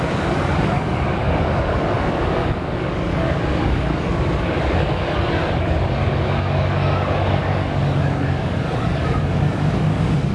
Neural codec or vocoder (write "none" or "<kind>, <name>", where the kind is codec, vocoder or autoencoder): codec, DAC